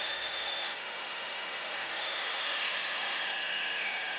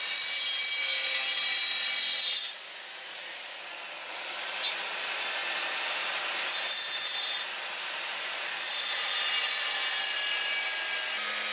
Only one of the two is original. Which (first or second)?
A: second